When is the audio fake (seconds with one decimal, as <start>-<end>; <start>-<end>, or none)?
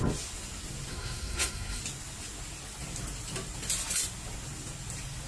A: 0.9-1.8